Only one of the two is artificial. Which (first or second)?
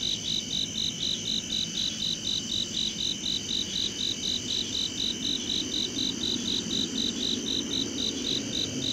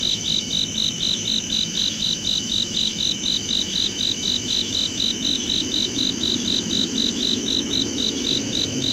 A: second